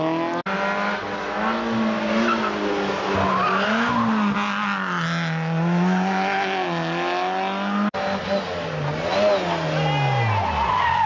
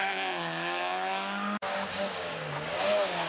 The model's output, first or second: second